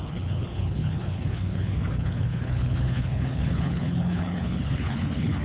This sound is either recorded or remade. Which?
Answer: remade